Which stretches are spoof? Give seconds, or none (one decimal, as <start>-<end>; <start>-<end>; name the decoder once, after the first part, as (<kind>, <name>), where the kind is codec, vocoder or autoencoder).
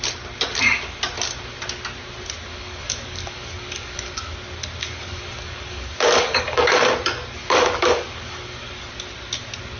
2.5-4.3 (codec, DAC); 4.8-6.9; 7.4-8.9